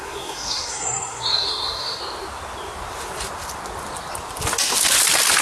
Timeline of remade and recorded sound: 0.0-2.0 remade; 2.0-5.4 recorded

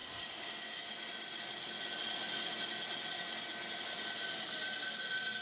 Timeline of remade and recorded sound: 0.0-5.4 recorded

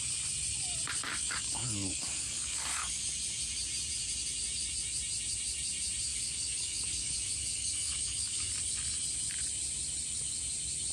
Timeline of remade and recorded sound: 0.0-1.1 recorded; 1.1-3.0 remade; 3.0-6.1 recorded; 6.1-8.5 remade; 8.5-10.9 recorded

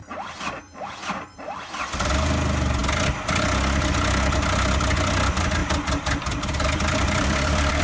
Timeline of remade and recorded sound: 0.0-1.5 remade; 1.5-5.6 recorded; 5.6-7.8 remade